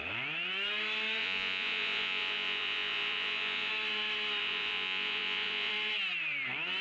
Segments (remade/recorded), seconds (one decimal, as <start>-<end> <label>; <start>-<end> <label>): 0.0-1.2 recorded; 1.2-3.7 remade; 3.7-4.4 recorded; 4.4-5.7 remade; 5.7-6.8 recorded